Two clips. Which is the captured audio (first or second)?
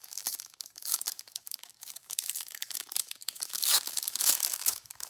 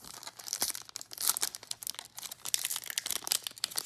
second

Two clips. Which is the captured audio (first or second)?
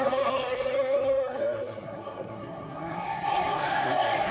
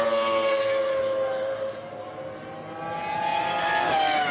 second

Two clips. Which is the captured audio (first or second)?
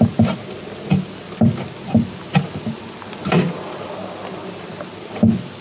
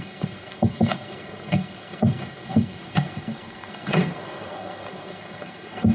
first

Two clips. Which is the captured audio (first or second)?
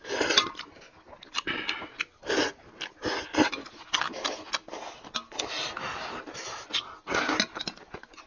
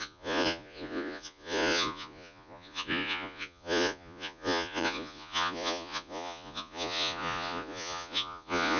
first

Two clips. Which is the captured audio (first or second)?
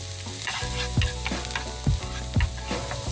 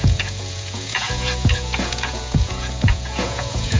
first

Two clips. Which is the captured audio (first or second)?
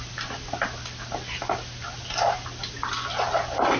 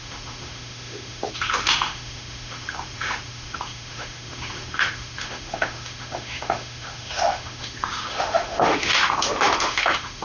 first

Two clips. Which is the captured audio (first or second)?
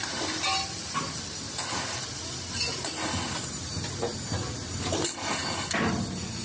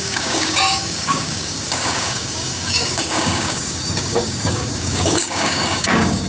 first